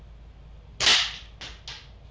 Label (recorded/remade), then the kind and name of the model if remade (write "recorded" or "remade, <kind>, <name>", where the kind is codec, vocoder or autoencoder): recorded